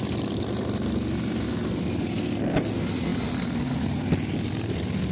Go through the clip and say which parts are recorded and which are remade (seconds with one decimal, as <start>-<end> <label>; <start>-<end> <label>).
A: 0.0-5.1 recorded